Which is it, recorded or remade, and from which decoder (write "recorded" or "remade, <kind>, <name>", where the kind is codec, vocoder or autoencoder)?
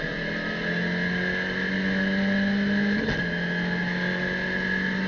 recorded